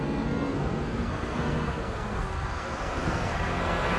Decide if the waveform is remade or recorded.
remade